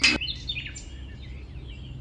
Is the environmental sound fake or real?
real